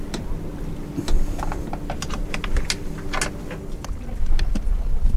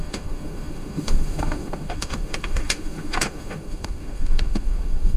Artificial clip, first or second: second